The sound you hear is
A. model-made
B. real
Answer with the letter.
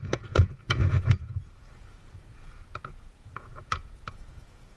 A